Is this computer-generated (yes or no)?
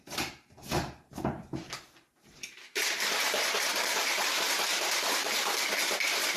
yes